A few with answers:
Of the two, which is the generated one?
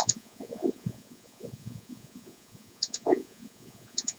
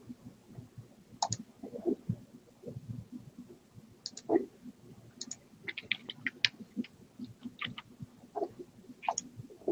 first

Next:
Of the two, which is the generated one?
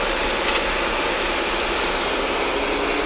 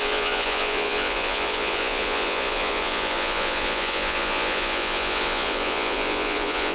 second